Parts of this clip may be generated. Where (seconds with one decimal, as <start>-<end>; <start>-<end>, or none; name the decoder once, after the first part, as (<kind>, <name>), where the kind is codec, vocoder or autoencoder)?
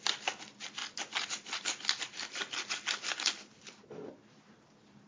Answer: none